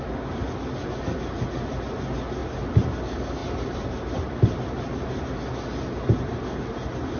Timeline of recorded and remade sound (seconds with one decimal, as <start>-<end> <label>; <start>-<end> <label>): 0.0-2.4 recorded; 2.4-3.0 remade; 3.0-3.4 recorded; 3.4-5.3 remade; 5.3-7.2 recorded